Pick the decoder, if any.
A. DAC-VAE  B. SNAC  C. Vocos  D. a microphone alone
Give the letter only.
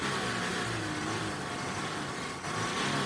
D